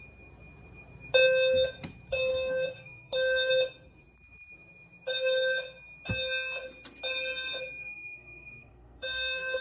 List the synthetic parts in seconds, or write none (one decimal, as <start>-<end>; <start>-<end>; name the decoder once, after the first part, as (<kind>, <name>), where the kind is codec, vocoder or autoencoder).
2.3-3.5 (codec, SNAC); 7.8-9.6